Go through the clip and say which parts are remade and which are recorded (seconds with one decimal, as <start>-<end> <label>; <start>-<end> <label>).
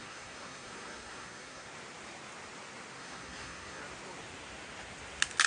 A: 0.0-1.7 remade; 1.7-3.0 recorded; 3.0-3.8 remade; 3.8-5.5 recorded